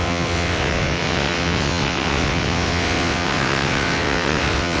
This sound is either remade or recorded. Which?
remade